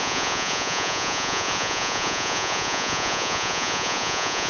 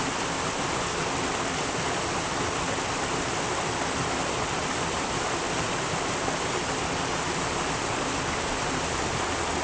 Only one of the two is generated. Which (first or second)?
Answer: first